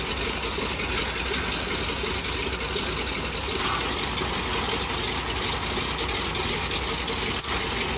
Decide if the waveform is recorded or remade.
recorded